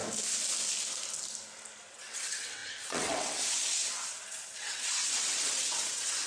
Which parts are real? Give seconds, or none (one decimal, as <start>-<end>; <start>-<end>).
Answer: 0.0-1.9